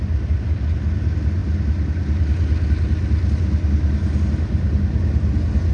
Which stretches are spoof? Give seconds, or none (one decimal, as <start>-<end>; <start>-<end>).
none